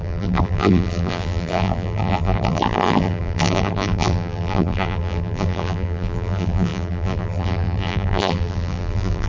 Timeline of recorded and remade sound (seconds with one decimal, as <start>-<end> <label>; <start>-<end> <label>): 0.0-9.3 remade